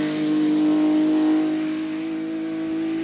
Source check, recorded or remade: recorded